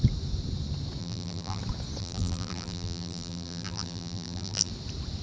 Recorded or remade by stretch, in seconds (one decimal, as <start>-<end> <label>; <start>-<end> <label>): 0.0-1.0 recorded; 1.0-1.6 remade; 1.6-2.0 recorded; 2.0-4.7 remade; 4.7-5.2 recorded